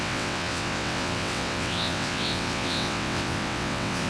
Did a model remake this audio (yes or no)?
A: yes